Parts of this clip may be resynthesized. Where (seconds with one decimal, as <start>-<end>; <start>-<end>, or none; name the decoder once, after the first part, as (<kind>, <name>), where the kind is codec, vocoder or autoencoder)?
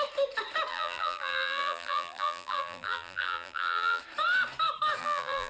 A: 0.7-4.0 (vocoder, BigVGAN v2); 5.0-5.5